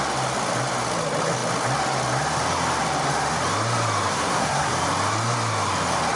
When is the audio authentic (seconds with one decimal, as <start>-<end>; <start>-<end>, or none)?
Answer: 0.0-4.1; 4.7-6.2